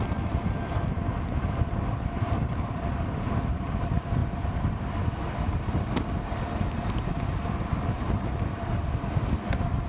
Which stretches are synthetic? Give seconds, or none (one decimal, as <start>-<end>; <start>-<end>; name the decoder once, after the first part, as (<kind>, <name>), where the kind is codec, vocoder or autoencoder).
none